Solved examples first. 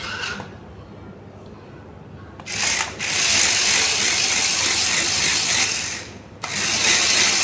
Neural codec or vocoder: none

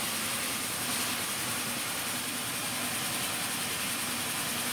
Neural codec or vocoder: none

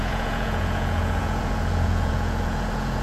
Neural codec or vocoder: vocoder, Vocos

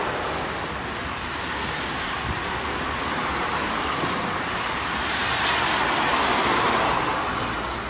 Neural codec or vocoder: none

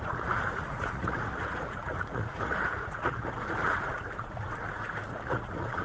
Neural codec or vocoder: vocoder, Vocos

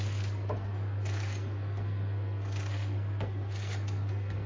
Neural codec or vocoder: codec, SNAC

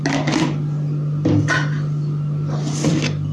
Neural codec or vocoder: none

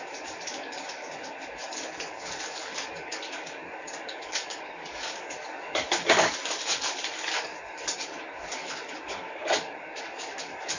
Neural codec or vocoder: codec, DAC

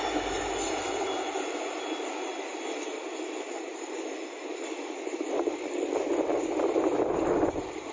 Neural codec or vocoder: none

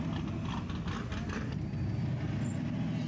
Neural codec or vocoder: none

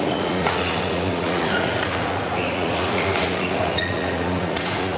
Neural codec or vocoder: vocoder, Vocos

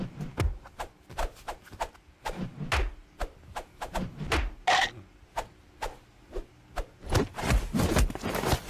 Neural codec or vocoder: none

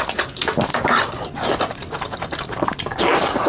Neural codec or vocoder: vocoder, BigVGAN v2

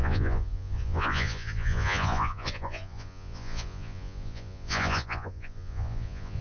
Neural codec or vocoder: vocoder, Vocos